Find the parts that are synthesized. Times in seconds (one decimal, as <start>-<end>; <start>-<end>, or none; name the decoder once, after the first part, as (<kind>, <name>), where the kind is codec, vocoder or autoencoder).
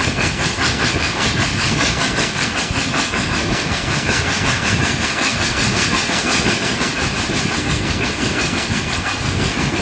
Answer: 0.0-6.9 (codec, SNAC); 7.4-9.8